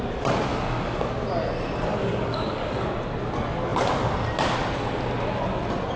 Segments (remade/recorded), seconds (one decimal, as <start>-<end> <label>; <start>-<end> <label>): 0.0-0.5 recorded; 0.5-1.1 remade; 1.1-1.9 recorded; 1.9-2.9 remade; 2.9-6.0 recorded